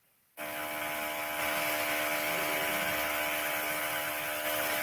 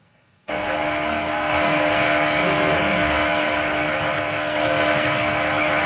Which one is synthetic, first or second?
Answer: second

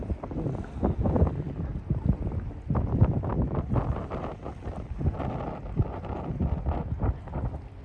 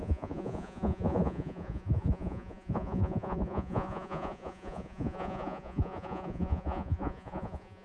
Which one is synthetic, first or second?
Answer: second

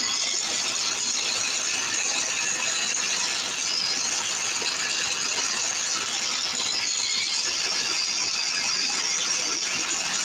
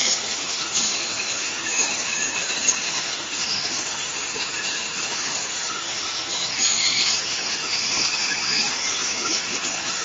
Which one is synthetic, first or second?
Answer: second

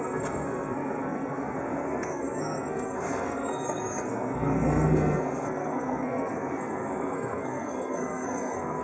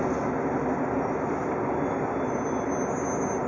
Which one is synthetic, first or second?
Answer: first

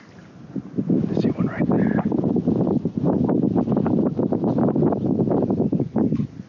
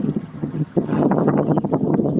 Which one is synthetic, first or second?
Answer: second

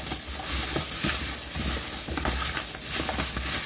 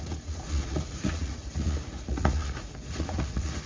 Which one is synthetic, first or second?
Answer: second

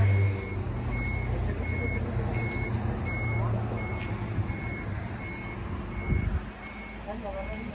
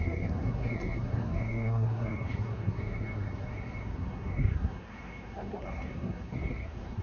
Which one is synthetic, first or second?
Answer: second